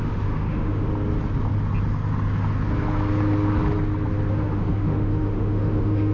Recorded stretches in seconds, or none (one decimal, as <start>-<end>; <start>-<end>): 0.9-4.3